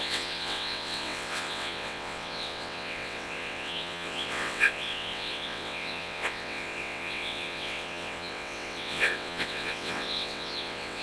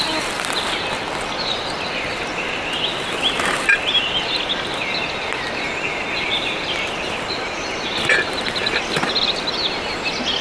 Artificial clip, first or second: first